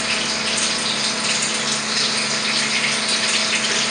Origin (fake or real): real